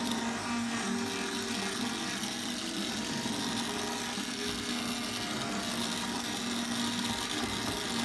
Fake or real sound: real